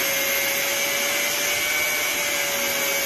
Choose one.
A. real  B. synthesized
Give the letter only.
A